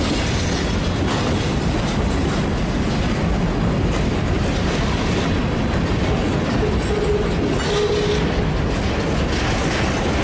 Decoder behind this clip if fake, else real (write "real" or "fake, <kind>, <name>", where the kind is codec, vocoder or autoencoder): real